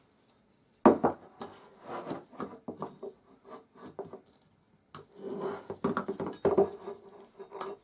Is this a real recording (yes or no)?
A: yes